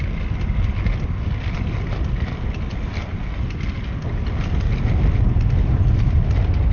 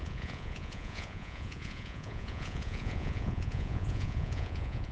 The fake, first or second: second